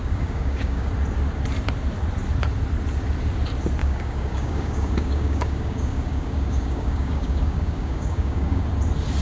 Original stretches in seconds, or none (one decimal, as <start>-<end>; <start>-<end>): 0.9-3.8; 8.6-9.2